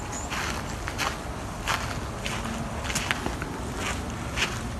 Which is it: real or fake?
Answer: real